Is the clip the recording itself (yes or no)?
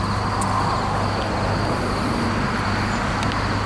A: yes